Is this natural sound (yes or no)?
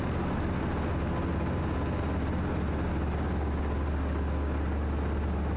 yes